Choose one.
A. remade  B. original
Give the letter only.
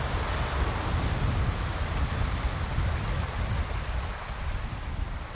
B